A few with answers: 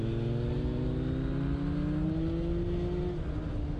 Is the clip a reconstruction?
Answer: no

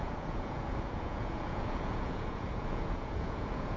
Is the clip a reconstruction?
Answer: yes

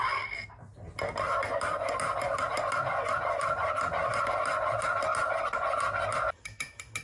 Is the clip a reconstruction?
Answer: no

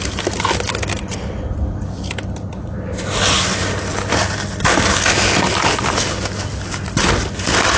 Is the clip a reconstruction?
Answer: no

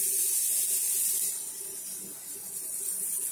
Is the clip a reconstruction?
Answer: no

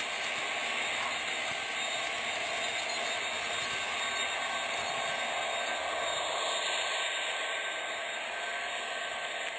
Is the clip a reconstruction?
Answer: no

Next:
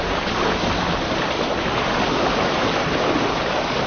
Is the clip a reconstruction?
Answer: no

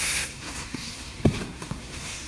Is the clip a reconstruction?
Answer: yes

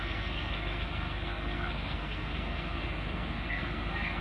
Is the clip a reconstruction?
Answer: yes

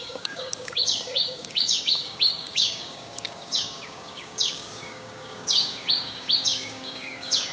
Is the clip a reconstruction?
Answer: yes